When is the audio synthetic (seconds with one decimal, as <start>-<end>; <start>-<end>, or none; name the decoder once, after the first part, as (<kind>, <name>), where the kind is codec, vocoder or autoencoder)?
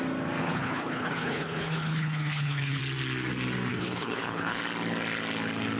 0.4-2.8 (codec, HILCodec); 3.7-4.6